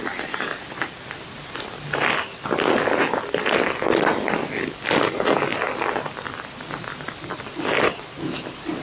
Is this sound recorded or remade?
recorded